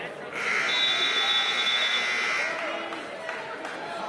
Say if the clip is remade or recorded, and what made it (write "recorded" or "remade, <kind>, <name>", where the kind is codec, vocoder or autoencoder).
recorded